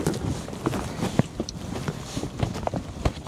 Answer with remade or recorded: recorded